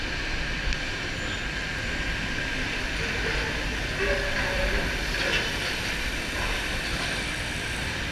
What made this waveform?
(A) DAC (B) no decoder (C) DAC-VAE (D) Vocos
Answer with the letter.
B